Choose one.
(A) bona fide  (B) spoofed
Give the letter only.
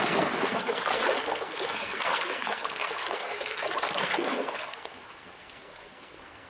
B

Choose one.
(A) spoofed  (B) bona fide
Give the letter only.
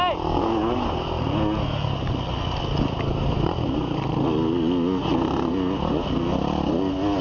B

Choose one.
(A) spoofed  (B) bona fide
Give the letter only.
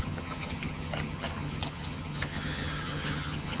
A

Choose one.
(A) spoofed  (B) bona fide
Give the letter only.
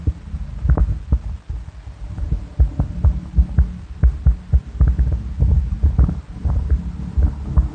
B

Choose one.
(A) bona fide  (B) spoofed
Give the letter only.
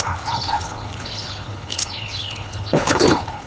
B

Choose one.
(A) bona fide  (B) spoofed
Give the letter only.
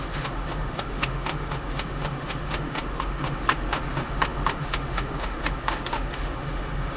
B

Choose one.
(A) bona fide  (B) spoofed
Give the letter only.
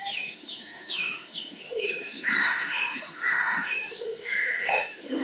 B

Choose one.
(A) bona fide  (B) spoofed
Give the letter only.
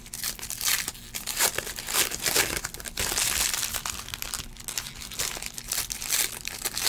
A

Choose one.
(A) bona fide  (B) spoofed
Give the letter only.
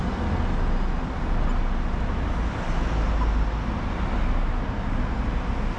A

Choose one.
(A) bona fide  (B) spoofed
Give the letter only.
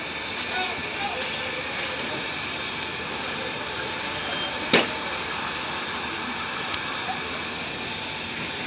A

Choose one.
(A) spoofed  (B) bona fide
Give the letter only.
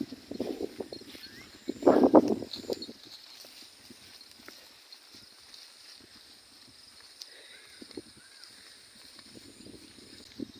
B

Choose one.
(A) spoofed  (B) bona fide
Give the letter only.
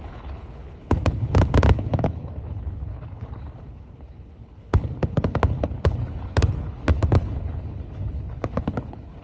A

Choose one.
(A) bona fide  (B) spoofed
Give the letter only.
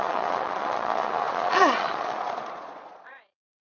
B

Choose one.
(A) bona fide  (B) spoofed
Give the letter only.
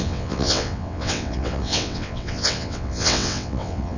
B